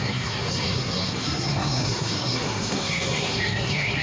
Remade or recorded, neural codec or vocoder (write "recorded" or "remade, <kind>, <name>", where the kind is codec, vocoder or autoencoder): remade, codec, SNAC